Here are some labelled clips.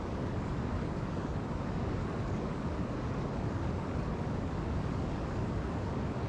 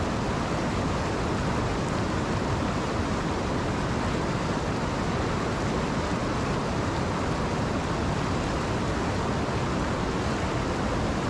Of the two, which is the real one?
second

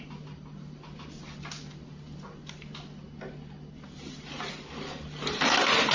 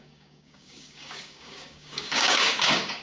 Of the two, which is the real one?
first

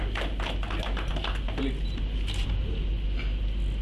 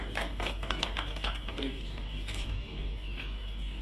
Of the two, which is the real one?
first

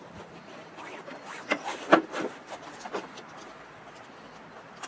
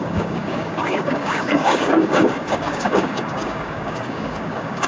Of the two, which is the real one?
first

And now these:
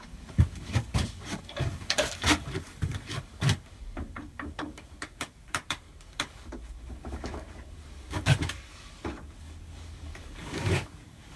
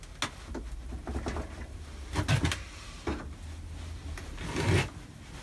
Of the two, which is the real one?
second